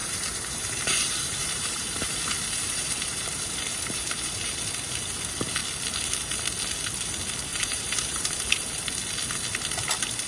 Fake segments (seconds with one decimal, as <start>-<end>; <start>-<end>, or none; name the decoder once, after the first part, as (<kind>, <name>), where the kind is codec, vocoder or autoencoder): 0.0-4.6 (vocoder, BigVGAN v2); 7.5-8.8

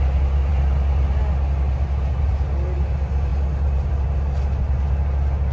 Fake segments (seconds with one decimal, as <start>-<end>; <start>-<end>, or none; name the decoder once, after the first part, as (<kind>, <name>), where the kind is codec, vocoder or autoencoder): none

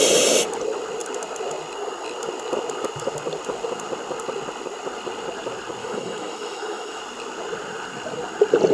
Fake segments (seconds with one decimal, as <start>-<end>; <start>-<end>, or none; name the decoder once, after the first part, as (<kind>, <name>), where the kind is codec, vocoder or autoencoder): 5.8-7.0 (autoencoder, DAC-VAE)

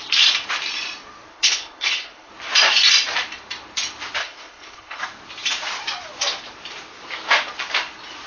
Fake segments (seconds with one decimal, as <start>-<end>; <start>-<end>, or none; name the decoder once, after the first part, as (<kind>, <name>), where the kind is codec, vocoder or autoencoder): 1.3-2.3 (codec, HILCodec); 4.2-5.0

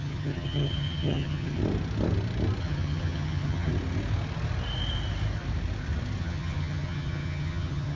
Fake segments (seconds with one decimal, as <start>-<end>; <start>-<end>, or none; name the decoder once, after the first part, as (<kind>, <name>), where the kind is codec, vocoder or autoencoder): 0.0-1.6 (vocoder, HiFi-GAN); 2.6-3.7; 6.2-8.0

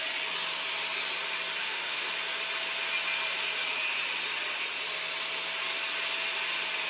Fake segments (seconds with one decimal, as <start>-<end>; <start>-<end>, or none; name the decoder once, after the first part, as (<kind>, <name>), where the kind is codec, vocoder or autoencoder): 1.6-2.1 (autoencoder, DAC-VAE)

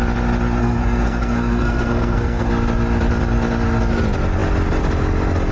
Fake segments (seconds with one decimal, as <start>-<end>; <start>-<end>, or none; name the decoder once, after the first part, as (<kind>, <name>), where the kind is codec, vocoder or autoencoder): 0.6-2.5 (codec, SNAC)